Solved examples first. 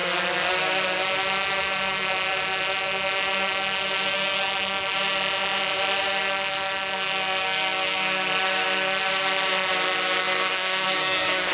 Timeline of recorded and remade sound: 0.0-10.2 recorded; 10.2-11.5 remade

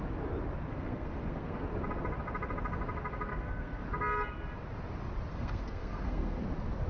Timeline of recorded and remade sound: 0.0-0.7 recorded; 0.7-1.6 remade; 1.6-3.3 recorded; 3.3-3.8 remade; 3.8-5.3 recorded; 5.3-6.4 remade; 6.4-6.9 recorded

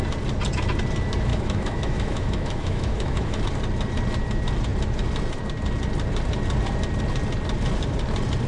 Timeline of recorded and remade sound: 0.0-1.3 recorded; 1.3-3.4 remade; 3.4-8.5 recorded